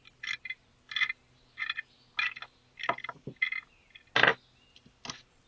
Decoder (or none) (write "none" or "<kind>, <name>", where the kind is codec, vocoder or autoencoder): none